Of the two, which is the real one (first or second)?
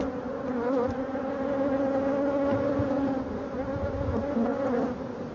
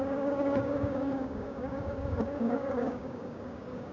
first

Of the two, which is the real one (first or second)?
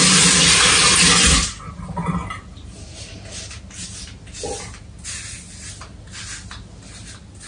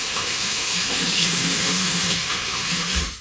first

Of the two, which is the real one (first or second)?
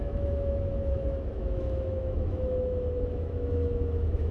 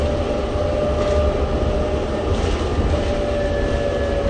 second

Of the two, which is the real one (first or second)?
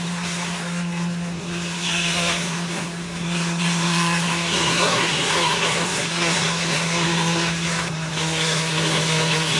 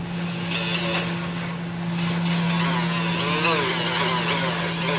second